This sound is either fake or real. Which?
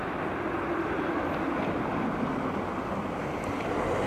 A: fake